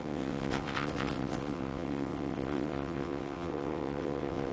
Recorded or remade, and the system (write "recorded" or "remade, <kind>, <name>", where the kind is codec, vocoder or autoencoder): remade, vocoder, WaveNeXt